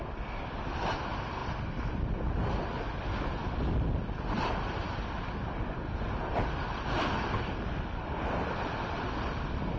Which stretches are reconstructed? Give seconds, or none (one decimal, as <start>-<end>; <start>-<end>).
none

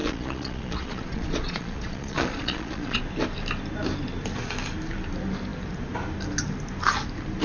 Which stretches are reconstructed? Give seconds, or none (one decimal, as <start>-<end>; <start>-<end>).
0.0-3.0

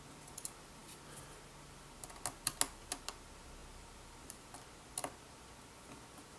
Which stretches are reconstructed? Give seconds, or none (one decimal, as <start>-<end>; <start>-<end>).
none